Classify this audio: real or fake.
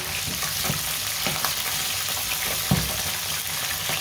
real